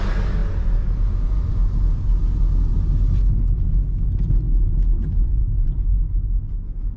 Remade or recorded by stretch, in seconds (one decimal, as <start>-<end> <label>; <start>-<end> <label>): 0.0-7.0 recorded